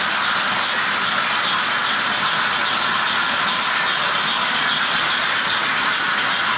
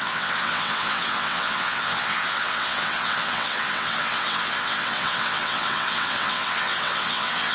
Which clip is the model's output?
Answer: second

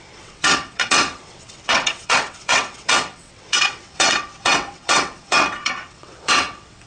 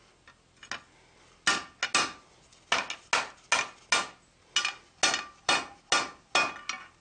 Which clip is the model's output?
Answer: first